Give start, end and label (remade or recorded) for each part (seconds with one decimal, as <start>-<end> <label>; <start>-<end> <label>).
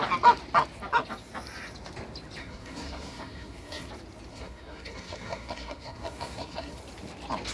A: 0.0-2.4 recorded; 2.4-3.9 remade; 3.9-4.3 recorded; 4.3-6.8 remade; 6.8-7.5 recorded